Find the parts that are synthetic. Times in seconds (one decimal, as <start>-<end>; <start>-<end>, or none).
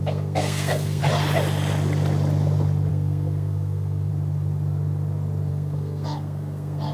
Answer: 0.0-1.0; 2.9-4.1; 5.5-6.9